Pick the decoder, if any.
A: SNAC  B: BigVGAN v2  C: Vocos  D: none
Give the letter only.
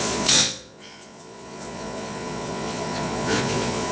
C